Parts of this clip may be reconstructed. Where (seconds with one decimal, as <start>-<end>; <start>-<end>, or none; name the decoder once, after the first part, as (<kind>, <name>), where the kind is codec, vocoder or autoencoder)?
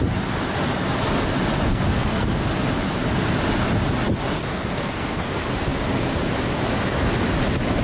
1.7-2.4 (codec, SNAC); 4.4-5.3